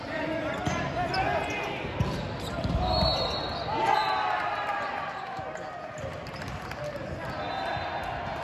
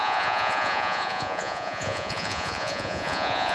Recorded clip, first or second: first